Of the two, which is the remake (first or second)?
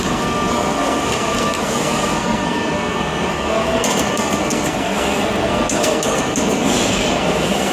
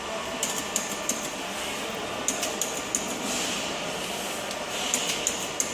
first